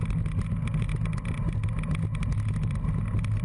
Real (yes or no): yes